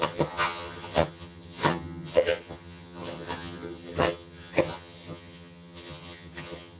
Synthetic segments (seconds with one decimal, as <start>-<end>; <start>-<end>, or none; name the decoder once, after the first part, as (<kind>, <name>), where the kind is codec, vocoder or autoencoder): 0.0-6.8 (vocoder, HiFi-GAN)